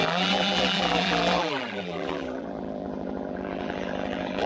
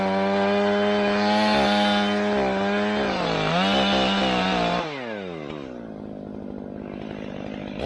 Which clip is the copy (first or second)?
first